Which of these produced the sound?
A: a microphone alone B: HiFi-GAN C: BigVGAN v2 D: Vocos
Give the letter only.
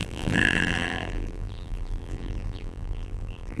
C